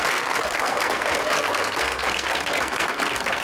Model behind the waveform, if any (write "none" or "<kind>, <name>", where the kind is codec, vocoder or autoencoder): codec, SNAC